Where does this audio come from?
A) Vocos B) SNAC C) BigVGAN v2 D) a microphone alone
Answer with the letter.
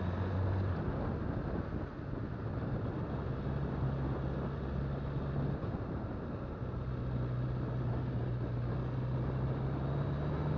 D